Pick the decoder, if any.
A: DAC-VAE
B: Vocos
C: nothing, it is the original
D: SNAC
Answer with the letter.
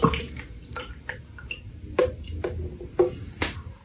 C